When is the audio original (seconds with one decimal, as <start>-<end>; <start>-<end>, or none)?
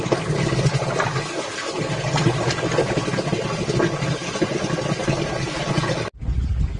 0.0-4.2; 5.2-6.8